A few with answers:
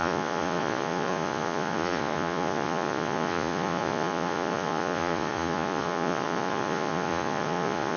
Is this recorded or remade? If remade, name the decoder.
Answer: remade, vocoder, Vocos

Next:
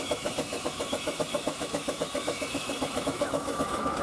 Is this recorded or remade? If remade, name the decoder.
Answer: remade, autoencoder, DAC-VAE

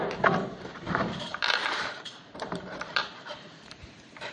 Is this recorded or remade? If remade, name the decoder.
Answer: remade, vocoder, BigVGAN v2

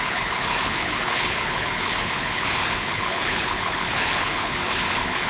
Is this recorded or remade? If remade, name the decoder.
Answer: remade, codec, HILCodec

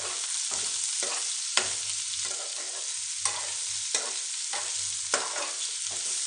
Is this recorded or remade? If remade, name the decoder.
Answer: recorded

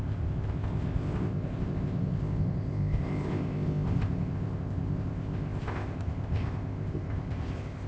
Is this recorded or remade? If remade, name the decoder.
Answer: remade, codec, ZipCodec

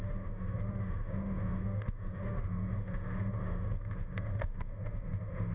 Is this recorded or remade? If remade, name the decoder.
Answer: remade, autoencoder, DAC-VAE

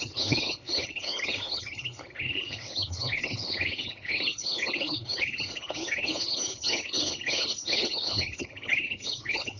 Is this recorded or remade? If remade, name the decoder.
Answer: remade, codec, HILCodec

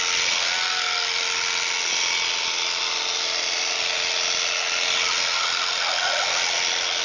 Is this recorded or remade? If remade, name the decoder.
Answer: recorded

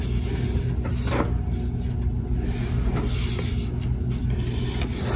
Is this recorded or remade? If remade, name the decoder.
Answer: recorded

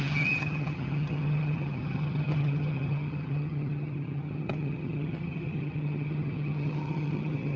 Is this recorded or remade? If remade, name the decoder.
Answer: remade, vocoder, HiFi-GAN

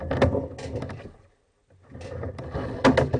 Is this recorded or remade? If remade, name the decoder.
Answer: recorded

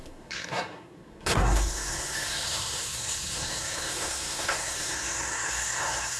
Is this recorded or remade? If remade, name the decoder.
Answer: remade, codec, SNAC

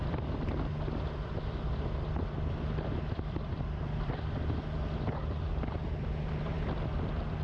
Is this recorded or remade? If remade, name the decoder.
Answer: remade, vocoder, BigVGAN v2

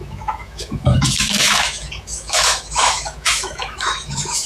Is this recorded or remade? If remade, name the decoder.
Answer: remade, autoencoder, DAC-VAE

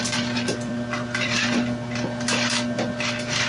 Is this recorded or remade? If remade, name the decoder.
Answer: remade, vocoder, BigVGAN v2